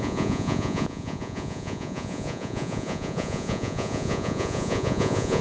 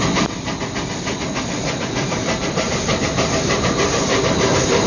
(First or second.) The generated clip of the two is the first